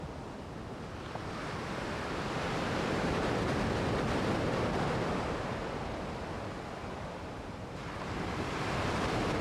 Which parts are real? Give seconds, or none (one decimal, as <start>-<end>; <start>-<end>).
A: 0.0-1.4; 3.6-6.8